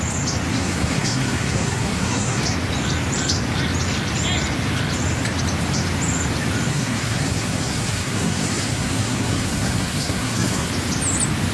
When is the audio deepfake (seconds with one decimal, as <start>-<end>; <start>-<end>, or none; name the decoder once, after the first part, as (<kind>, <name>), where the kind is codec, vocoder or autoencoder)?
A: 0.5-2.4 (codec, SNAC); 6.7-10.7